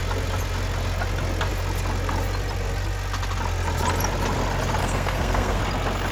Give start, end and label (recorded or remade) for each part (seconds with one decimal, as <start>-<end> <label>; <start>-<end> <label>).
0.0-4.8 recorded; 4.8-5.6 remade; 5.6-6.1 recorded